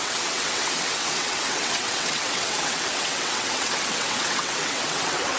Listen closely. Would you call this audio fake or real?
fake